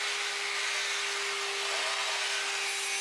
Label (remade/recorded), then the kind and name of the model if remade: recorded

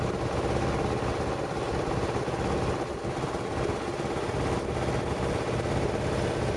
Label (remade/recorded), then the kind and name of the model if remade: recorded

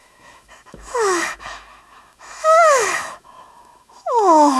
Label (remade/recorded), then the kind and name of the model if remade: remade, autoencoder, DAC-VAE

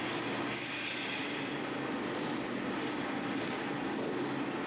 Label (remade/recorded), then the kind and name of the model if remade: recorded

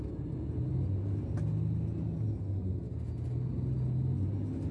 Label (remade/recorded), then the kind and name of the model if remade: recorded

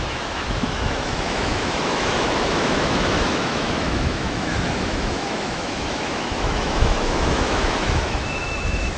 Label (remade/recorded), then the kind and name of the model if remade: remade, autoencoder, DAC-VAE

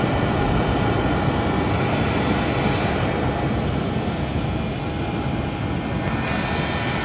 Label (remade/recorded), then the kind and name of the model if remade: recorded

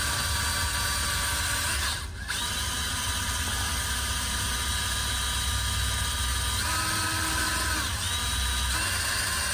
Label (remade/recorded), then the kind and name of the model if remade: recorded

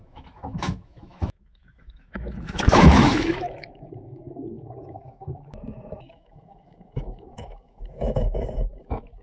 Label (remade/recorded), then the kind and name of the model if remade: remade, autoencoder, DAC-VAE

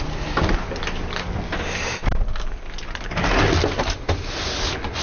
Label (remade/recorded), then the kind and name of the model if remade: recorded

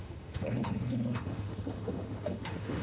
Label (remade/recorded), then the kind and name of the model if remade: remade, autoencoder, DAC-VAE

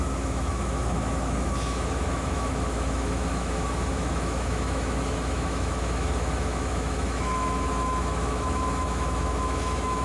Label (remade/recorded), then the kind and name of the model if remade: remade, autoencoder, DAC-VAE